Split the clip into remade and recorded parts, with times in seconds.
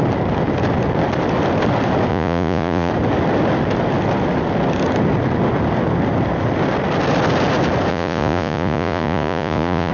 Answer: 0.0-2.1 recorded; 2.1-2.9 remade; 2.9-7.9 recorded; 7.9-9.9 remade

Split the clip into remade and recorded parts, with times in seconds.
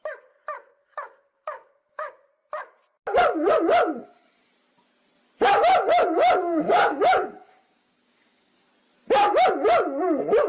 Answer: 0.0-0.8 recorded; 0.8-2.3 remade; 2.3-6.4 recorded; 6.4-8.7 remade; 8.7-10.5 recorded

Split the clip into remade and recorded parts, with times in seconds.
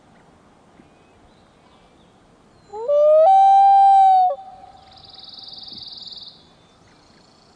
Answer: 0.0-7.6 recorded